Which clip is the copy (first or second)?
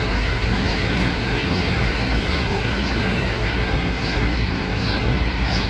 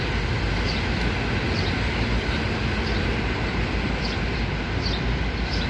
first